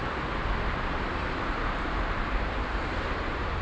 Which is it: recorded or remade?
remade